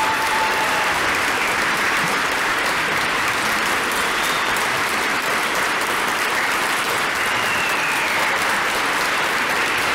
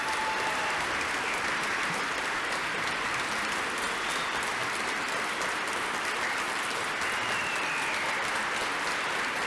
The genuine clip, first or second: second